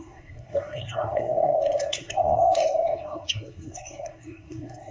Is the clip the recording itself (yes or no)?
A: no